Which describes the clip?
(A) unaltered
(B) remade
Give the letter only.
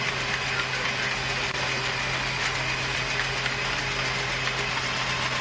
A